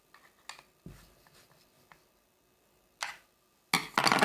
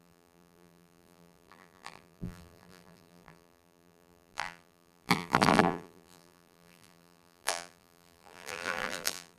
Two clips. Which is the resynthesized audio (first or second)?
second